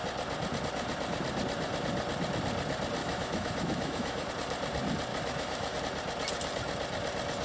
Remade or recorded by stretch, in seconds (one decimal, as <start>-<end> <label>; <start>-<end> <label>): 0.0-3.0 recorded; 3.0-4.3 remade; 4.3-5.1 recorded; 5.1-5.8 remade; 5.8-7.4 recorded